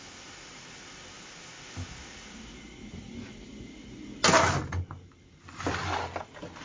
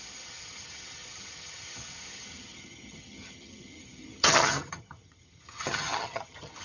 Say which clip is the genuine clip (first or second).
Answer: first